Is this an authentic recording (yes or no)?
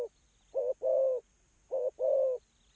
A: yes